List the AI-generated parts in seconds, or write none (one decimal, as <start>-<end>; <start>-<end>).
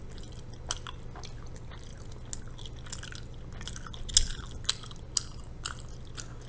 none